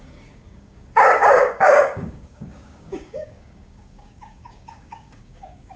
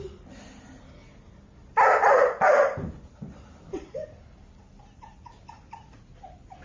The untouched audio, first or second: second